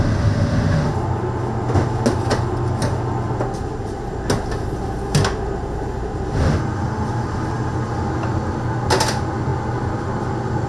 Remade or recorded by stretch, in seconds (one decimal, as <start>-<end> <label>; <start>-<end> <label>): 0.0-10.7 recorded